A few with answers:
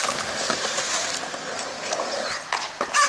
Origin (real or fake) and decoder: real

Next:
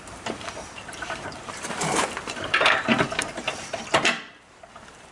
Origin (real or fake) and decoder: fake, vocoder, BigVGAN v2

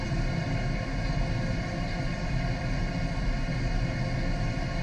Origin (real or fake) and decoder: real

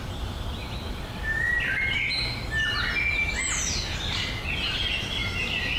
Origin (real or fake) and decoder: real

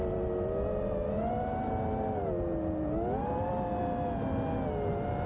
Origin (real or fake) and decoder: real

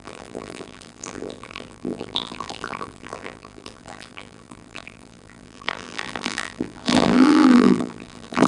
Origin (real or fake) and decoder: fake, vocoder, BigVGAN v2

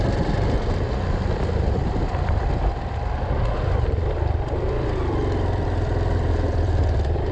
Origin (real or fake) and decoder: fake, vocoder, BigVGAN v2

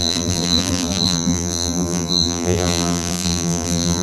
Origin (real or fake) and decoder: fake, vocoder, BigVGAN v2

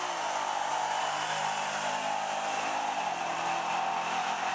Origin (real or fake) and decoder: real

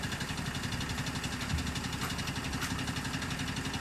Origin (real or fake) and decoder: real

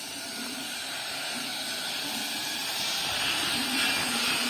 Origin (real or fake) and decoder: fake, vocoder, BigVGAN v2